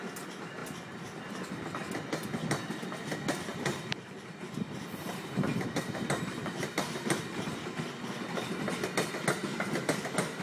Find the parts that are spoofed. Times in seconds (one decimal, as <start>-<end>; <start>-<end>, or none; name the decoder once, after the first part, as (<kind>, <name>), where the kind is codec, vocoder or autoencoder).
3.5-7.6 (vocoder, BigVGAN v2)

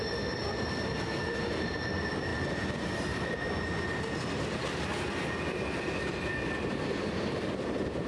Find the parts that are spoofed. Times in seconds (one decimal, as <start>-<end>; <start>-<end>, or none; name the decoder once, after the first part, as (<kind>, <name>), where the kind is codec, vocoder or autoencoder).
0.0-2.3 (vocoder, BigVGAN v2); 6.7-8.1

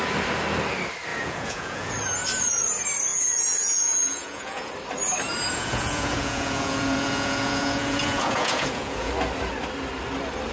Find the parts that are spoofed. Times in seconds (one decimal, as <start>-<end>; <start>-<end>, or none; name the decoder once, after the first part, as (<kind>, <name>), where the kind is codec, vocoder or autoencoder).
1.1-1.9 (vocoder, Vocos); 3.1-4.7; 5.5-9.1